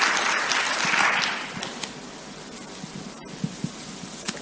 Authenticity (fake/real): real